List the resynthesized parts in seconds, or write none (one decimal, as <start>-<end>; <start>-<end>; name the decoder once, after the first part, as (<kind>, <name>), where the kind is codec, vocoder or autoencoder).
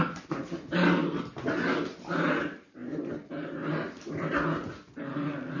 2.8-3.7 (vocoder, BigVGAN v2)